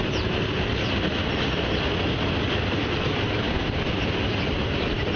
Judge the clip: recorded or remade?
recorded